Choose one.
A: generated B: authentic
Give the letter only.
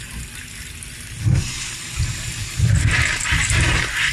B